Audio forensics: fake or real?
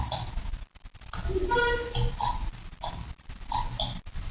real